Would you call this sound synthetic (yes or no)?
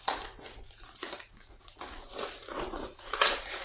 yes